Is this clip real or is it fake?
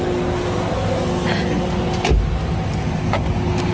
real